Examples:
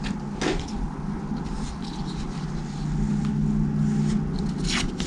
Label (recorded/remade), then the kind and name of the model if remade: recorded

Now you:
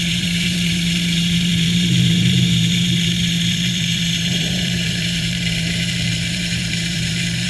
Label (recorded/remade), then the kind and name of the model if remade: remade, vocoder, BigVGAN v2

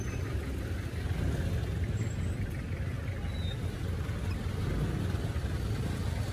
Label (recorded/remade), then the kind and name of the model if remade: recorded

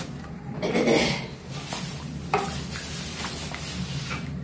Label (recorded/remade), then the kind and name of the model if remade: recorded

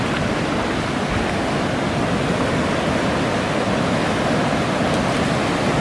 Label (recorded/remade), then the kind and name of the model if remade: recorded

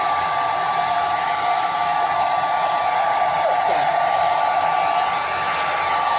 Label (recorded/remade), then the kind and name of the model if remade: recorded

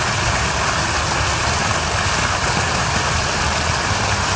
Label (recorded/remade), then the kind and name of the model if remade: recorded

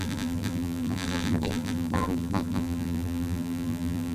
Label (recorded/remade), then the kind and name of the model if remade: remade, vocoder, BigVGAN v2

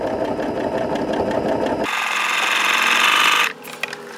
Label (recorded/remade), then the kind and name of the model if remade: recorded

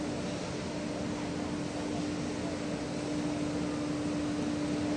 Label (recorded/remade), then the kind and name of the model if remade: recorded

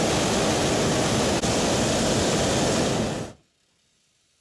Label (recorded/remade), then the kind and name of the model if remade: recorded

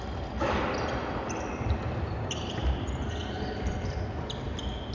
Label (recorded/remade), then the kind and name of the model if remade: remade, vocoder, BigVGAN v2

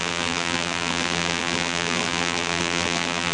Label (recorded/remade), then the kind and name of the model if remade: remade, vocoder, BigVGAN v2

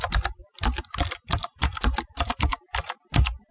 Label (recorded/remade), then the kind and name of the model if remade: recorded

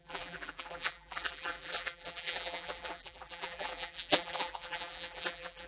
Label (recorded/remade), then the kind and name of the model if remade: remade, vocoder, BigVGAN v2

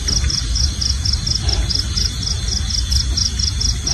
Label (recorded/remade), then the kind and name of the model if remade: recorded